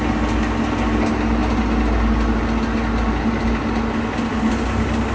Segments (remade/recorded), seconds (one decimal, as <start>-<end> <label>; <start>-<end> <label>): 0.0-5.1 recorded